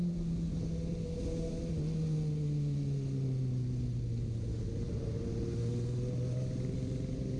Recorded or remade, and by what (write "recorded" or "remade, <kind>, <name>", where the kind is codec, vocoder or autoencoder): recorded